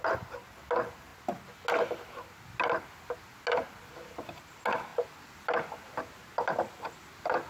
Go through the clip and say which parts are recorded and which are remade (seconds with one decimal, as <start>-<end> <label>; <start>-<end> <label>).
0.0-7.5 recorded